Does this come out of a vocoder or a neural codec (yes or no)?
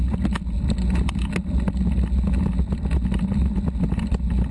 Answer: no